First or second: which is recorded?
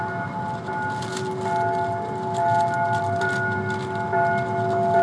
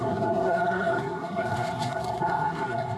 first